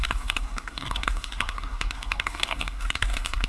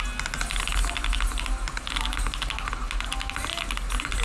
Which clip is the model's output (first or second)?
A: first